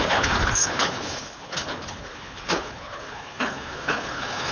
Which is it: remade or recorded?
remade